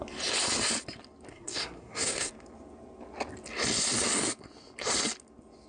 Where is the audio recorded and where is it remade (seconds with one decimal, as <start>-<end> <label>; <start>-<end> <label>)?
0.0-1.3 recorded; 1.3-2.3 remade; 2.3-5.7 recorded